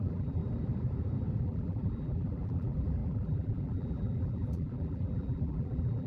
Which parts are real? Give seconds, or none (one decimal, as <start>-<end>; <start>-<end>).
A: 0.4-1.4